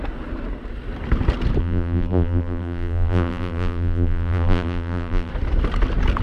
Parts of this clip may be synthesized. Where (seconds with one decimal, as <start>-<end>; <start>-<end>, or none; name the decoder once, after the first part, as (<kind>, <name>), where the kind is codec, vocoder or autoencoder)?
1.6-5.3 (vocoder, BigVGAN v2)